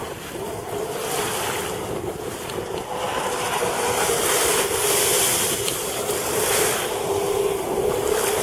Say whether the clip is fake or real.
real